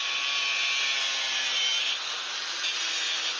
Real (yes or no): yes